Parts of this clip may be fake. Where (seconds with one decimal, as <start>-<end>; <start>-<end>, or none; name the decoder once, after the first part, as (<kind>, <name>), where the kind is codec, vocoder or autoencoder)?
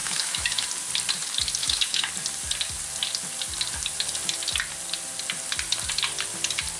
0.0-0.7 (autoencoder, DAC-VAE); 1.6-2.1